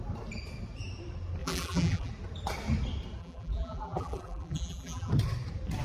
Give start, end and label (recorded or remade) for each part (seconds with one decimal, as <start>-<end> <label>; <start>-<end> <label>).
0.0-1.4 recorded; 1.4-2.1 remade; 2.1-3.2 recorded; 3.2-5.1 remade; 5.1-5.8 recorded